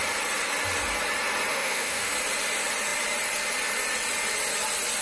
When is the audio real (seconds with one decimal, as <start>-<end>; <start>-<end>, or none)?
0.0-1.5; 2.1-5.0